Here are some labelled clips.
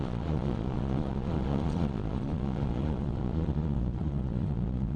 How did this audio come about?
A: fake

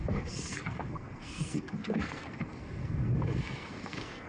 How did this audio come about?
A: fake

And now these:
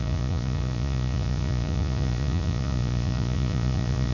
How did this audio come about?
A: fake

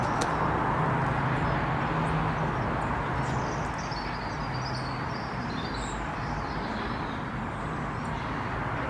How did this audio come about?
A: real